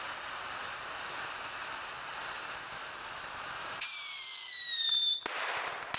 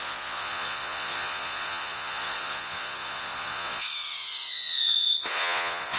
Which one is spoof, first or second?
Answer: second